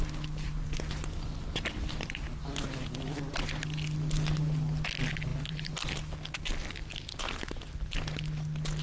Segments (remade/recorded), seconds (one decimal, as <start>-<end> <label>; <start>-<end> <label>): 0.0-5.3 recorded; 5.3-6.0 remade; 6.0-8.8 recorded